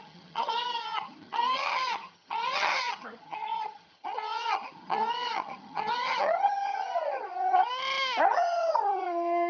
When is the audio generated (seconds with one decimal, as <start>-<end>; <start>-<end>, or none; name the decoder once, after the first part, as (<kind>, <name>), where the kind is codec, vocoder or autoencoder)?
0.0-7.7 (vocoder, HiFi-GAN); 8.2-9.5